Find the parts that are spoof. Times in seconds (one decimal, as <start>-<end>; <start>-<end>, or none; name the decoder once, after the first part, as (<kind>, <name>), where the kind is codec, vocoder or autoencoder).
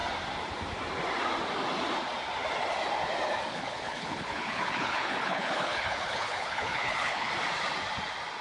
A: 3.5-7.3 (codec, HILCodec)